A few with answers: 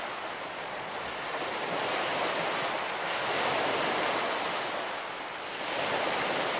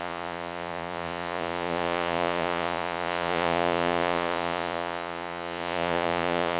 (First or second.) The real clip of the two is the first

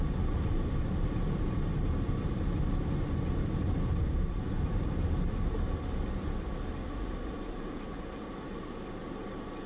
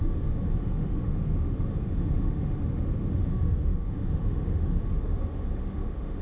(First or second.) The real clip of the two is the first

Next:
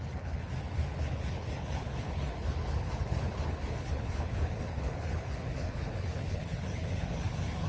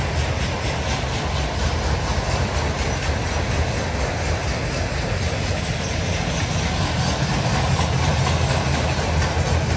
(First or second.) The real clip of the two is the second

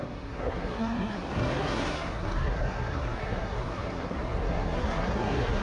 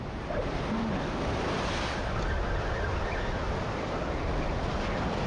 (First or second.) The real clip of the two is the second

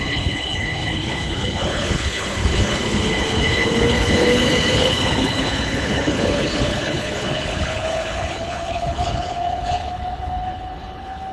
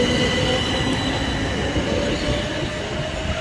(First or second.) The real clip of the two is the second